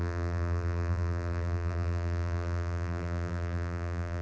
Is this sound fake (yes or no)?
yes